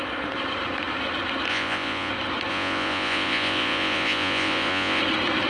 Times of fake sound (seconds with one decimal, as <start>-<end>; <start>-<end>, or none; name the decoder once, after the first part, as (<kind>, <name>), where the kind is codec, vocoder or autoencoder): 1.5-2.1 (vocoder, Vocos); 2.5-5.0